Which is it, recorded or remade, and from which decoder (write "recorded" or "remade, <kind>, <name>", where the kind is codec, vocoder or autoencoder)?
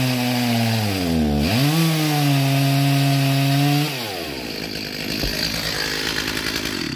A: recorded